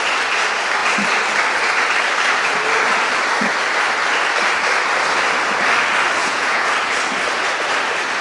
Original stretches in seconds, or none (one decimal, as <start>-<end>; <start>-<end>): 0.0-6.2; 6.7-8.2